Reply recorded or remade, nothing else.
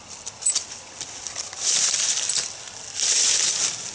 recorded